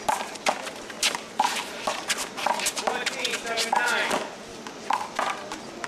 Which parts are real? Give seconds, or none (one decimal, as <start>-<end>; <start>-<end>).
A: 0.0-1.6; 2.3-5.9